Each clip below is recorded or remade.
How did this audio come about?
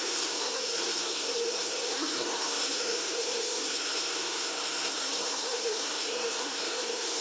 remade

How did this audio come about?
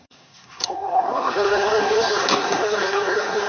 remade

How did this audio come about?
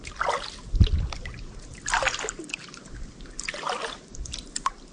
recorded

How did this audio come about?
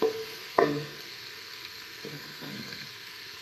remade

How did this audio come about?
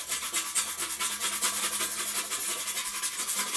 recorded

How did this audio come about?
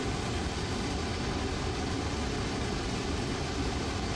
recorded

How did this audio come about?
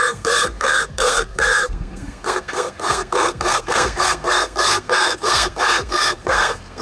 remade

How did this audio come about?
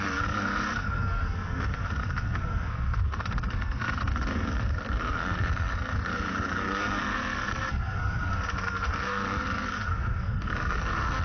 remade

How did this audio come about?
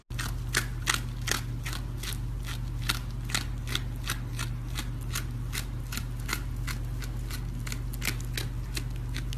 recorded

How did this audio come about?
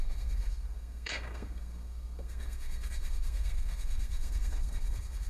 remade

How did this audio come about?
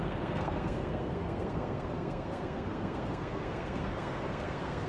remade